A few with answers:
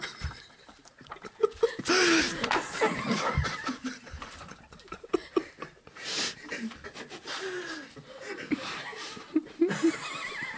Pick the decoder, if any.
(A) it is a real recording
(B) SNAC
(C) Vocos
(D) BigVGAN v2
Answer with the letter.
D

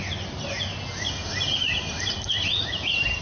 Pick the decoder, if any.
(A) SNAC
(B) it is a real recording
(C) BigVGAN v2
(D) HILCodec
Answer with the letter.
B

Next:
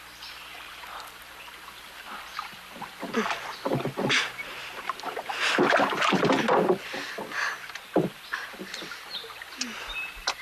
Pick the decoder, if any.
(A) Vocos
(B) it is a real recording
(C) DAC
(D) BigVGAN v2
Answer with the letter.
B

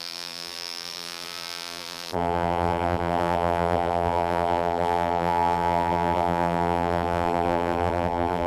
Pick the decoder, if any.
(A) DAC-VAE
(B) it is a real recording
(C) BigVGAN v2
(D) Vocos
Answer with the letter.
C